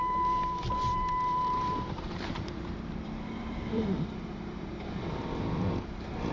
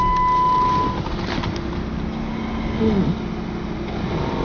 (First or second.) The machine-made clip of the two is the first